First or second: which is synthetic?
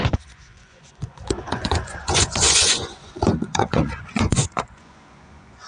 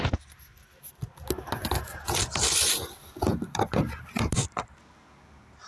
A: first